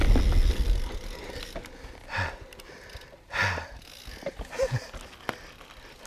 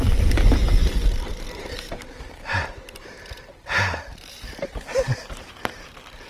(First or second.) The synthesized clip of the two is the second